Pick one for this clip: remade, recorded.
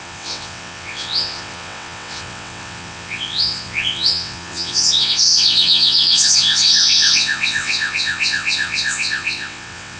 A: remade